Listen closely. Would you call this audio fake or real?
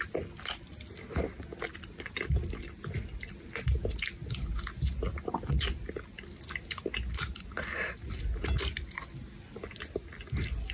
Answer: real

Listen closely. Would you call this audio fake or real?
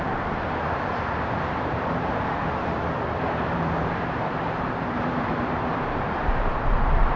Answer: fake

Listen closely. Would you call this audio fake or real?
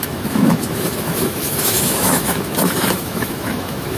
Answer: fake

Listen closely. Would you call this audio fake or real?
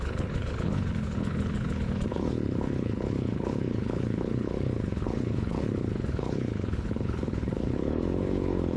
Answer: fake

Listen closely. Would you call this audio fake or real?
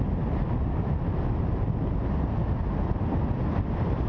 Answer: real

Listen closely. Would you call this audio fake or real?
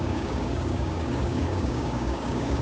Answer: fake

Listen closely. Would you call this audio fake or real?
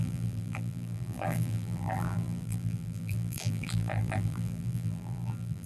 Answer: fake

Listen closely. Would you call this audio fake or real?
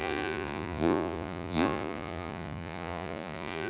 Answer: fake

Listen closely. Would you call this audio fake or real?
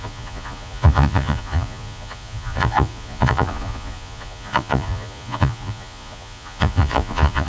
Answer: fake